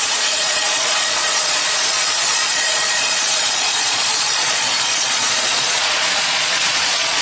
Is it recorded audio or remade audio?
remade